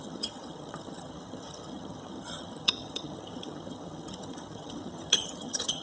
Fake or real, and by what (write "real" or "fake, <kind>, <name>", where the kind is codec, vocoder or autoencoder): fake, vocoder, HiFi-GAN